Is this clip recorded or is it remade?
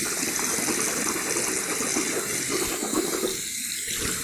recorded